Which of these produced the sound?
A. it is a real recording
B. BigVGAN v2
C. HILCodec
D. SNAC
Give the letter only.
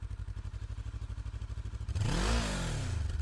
A